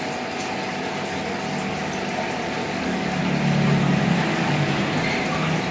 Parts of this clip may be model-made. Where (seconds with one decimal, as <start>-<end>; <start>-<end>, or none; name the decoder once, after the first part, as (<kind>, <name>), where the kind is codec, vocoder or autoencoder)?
2.6-3.2 (codec, DAC); 4.3-4.8